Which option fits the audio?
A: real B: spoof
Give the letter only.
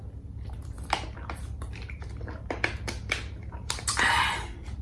A